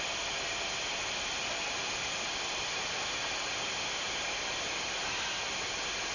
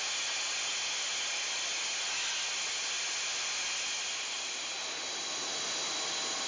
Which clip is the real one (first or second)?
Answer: second